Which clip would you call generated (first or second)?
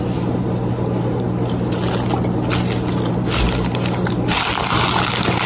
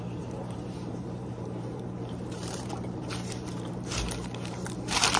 second